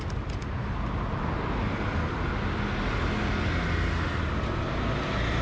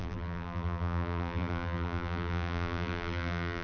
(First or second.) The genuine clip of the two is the first